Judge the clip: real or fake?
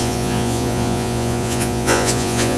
fake